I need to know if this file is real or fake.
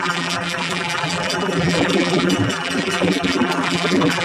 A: fake